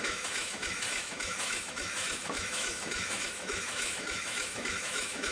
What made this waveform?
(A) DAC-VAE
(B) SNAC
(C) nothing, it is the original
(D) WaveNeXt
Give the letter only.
A